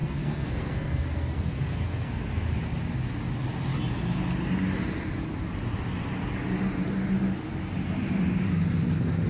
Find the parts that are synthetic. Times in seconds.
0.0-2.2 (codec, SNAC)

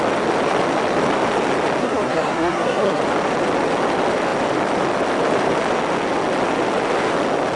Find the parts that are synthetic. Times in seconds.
1.8-3.0 (codec, SNAC)

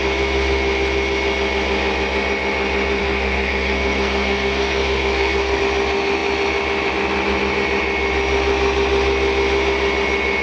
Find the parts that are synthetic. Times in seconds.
3.0-5.6 (codec, SNAC)